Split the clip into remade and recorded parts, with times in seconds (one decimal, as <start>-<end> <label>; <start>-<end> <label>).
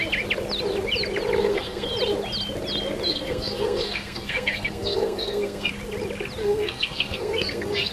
0.0-1.4 recorded; 1.4-1.9 remade; 1.9-3.1 recorded; 3.1-5.7 remade; 5.7-6.4 recorded; 6.4-7.9 remade